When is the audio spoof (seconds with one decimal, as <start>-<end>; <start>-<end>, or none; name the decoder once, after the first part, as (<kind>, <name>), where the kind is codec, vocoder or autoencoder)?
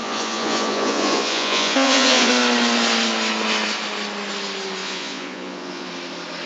0.0-2.3 (vocoder, Vocos); 4.8-5.9